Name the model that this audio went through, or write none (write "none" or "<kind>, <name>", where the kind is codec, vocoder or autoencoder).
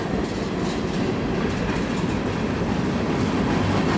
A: none